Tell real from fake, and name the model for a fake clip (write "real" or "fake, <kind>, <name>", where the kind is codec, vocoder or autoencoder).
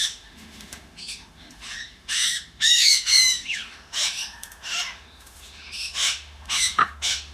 fake, autoencoder, DAC-VAE